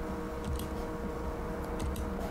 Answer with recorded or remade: recorded